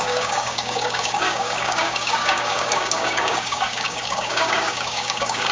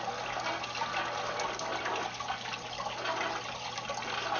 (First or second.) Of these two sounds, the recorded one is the second